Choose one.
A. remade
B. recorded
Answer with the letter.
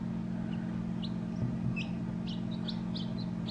B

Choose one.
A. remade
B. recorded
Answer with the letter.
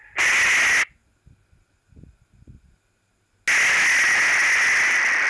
B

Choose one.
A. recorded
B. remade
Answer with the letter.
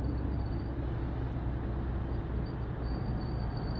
A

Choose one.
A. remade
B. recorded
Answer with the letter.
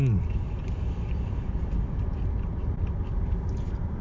B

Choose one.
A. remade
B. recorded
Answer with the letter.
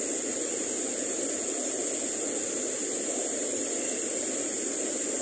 B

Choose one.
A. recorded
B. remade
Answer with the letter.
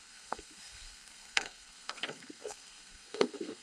B